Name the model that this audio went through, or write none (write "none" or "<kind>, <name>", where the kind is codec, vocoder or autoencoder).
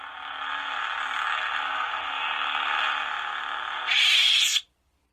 vocoder, BigVGAN v2